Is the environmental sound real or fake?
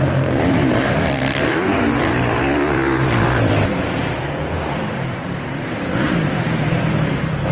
fake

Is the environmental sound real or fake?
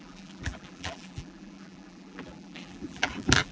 fake